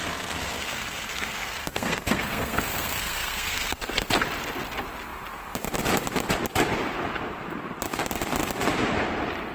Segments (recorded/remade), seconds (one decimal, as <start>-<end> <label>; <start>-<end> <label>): 0.0-4.1 remade; 4.1-9.5 recorded